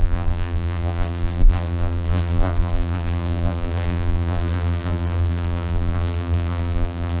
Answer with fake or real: fake